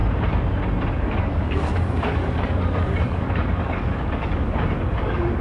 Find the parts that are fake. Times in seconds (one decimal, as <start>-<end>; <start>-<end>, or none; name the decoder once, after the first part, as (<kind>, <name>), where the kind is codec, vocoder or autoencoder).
0.9-5.4 (codec, DAC)